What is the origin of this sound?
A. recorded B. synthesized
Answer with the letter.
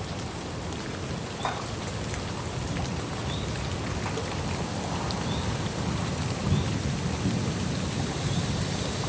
A